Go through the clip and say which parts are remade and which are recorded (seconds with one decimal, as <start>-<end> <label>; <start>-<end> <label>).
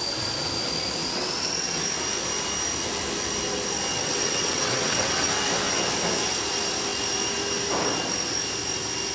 0.0-1.0 recorded; 1.0-1.8 remade; 1.8-3.9 recorded; 3.9-5.3 remade; 5.3-9.1 recorded